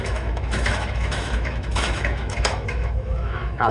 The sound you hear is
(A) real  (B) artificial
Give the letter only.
B